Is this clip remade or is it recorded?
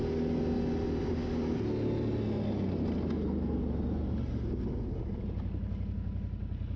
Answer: recorded